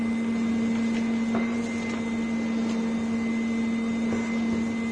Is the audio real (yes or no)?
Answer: yes